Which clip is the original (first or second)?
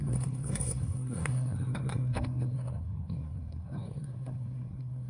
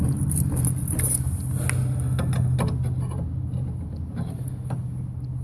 second